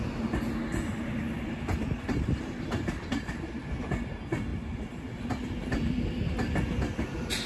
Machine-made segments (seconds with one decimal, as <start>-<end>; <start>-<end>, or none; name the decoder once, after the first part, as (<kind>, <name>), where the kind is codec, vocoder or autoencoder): none